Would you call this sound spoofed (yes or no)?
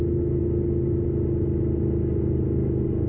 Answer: no